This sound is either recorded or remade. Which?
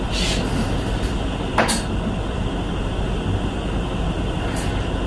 recorded